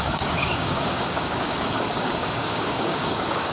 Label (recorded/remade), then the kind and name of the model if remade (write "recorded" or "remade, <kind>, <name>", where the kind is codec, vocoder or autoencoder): remade, codec, DAC